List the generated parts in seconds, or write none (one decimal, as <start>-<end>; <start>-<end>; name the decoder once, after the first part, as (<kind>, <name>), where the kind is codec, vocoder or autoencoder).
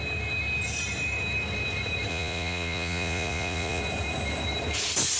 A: 2.1-3.8 (vocoder, Vocos)